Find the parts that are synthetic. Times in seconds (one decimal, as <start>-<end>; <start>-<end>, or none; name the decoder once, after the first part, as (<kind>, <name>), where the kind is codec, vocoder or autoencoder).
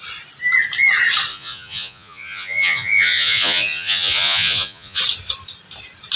1.3-5.0 (vocoder, Vocos)